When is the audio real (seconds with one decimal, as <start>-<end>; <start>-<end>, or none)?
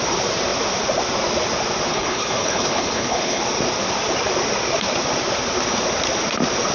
0.0-1.9; 3.4-6.7